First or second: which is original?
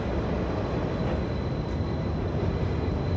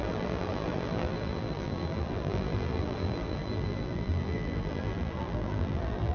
first